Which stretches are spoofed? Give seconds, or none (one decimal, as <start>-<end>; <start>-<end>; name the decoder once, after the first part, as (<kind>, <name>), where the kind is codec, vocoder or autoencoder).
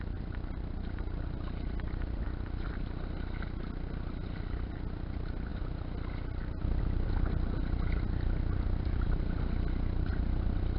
none